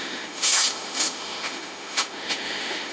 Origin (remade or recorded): remade